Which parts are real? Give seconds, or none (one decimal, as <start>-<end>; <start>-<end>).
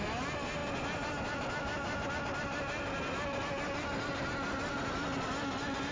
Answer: 0.0-5.9